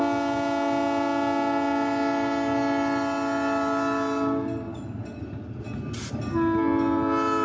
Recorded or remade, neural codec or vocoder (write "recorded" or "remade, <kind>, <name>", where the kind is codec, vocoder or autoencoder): recorded